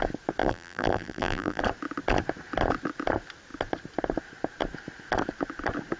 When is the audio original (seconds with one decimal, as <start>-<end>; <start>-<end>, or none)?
0.0-0.4; 1.6-6.0